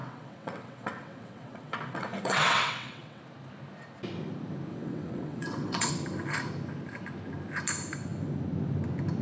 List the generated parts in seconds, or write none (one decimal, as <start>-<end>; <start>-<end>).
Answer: 0.0-3.2; 4.7-5.9